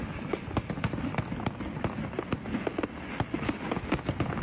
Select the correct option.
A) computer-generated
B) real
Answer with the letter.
B